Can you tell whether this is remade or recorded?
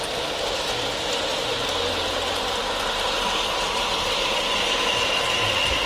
recorded